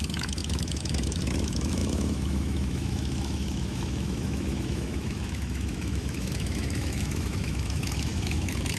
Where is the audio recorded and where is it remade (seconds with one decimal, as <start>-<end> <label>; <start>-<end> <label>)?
0.0-8.8 remade